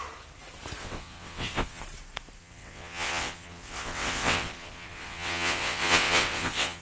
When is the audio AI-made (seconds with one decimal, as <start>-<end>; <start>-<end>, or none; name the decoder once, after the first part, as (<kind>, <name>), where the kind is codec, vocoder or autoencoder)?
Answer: 0.8-1.8 (vocoder, WaveNeXt); 2.4-6.8